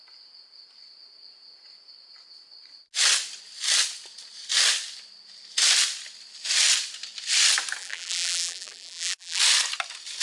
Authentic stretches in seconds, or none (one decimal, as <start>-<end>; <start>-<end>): 0.0-7.8; 9.4-10.2